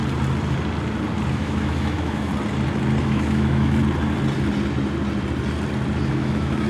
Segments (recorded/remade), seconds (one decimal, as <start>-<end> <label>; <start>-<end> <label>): 0.0-1.3 recorded; 1.3-2.3 remade; 2.3-3.0 recorded; 3.0-3.8 remade; 3.8-6.1 recorded; 6.1-6.7 remade